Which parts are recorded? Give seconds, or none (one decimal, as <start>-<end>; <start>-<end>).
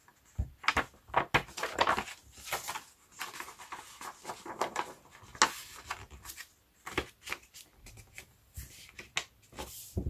0.0-10.1